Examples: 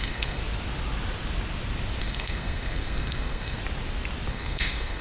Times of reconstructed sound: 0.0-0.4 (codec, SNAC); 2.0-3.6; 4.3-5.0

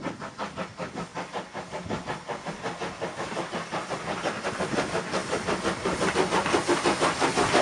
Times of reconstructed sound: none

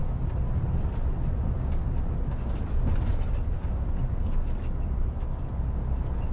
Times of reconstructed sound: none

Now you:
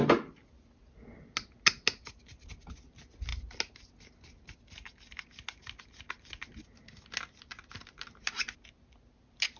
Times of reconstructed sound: none